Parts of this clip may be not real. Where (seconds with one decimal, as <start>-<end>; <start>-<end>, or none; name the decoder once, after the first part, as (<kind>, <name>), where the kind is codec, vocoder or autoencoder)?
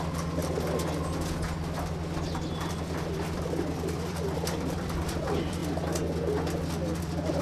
0.0-0.4 (vocoder, BigVGAN v2); 2.5-5.6; 7.0-7.4